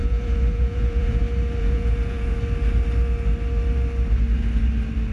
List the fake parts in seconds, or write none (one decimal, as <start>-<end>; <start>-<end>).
0.0-1.2; 1.6-2.4